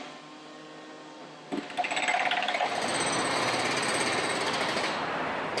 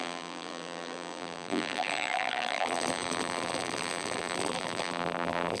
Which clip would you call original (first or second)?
first